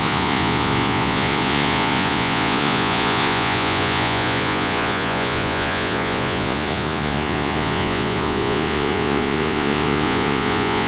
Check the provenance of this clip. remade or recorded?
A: remade